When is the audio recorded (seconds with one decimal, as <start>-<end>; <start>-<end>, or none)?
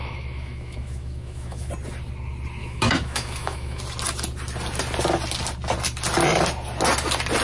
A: 1.7-2.6; 3.8-7.4